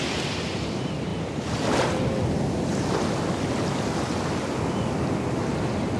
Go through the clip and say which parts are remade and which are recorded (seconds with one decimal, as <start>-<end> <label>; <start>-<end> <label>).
0.0-6.0 recorded